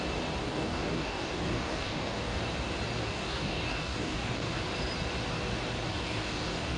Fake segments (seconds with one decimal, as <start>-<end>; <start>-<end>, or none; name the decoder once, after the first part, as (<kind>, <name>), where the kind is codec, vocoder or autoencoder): 0.4-2.4 (codec, DAC); 3.0-4.6; 5.9-6.8